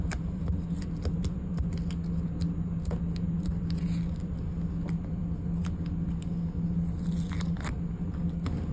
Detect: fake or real real